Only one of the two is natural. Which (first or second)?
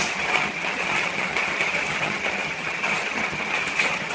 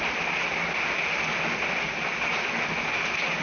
second